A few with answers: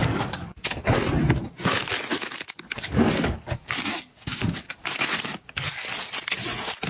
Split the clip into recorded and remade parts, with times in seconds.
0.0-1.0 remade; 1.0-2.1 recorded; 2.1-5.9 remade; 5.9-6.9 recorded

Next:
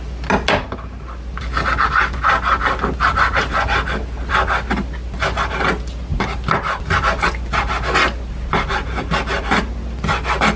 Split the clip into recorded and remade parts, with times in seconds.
0.0-10.6 recorded

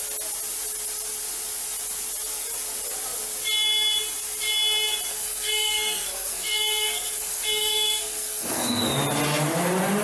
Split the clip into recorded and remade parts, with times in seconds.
0.0-5.1 recorded; 5.1-8.8 remade; 8.8-10.0 recorded